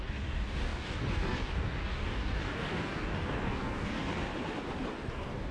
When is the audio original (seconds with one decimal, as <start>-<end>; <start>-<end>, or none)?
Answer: 4.3-5.1

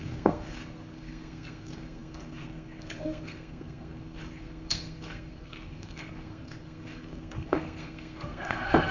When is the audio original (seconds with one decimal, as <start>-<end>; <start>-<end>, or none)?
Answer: none

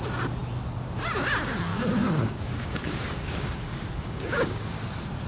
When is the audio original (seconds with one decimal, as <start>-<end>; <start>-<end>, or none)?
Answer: 0.0-1.7; 4.8-5.3

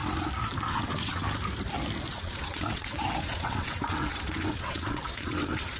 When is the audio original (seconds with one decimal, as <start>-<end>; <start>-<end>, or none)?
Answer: 0.0-0.7; 1.2-2.1

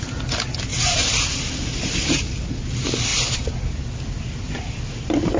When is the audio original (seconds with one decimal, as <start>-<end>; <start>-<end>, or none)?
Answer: 0.0-0.7; 2.2-5.4